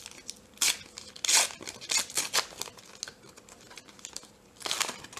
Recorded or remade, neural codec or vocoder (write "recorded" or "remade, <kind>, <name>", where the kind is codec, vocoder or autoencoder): recorded